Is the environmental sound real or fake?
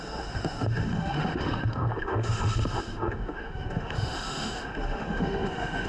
fake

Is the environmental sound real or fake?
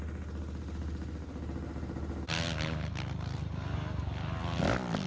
real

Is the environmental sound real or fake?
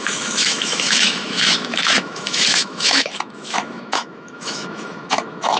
fake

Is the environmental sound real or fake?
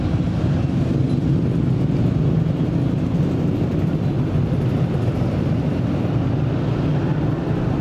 real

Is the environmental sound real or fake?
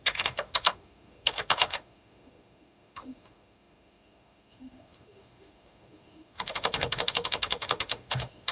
fake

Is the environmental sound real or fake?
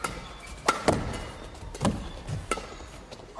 real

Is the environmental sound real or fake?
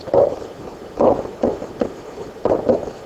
real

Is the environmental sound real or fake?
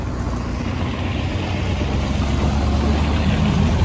real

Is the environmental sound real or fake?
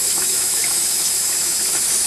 fake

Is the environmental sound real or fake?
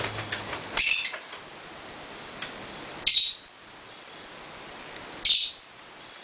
real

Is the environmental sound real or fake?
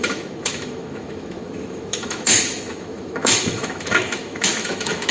fake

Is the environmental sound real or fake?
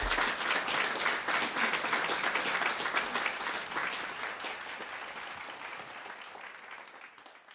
real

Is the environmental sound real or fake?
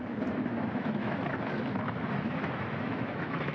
fake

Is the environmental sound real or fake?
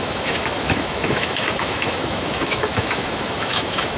fake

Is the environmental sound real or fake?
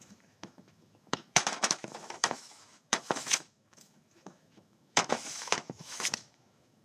fake